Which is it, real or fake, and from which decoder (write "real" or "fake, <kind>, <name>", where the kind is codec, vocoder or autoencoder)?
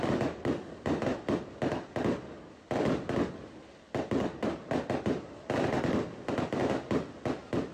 fake, vocoder, BigVGAN v2